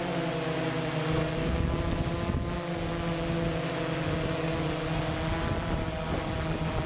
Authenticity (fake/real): real